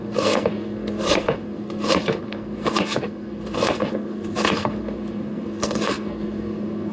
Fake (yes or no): yes